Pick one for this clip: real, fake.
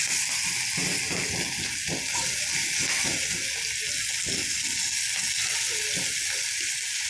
real